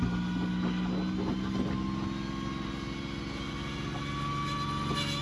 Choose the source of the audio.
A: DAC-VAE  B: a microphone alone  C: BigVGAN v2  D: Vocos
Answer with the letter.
B